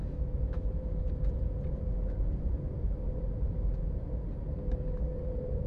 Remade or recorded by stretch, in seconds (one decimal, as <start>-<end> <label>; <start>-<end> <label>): 0.0-1.1 remade; 1.1-5.7 recorded